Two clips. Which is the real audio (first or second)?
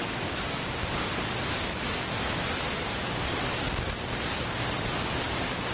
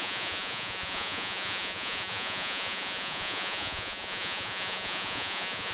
first